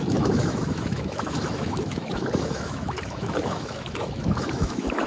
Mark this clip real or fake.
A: fake